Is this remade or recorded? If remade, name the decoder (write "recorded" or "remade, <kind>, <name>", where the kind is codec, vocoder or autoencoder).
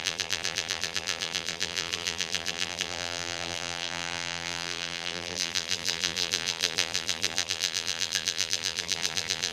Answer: remade, vocoder, BigVGAN v2